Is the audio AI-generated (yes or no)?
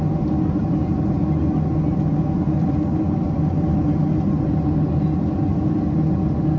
no